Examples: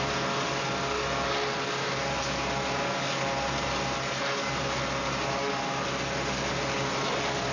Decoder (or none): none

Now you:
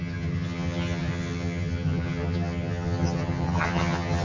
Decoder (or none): vocoder, HiFi-GAN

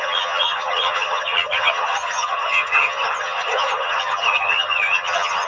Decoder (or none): vocoder, HiFi-GAN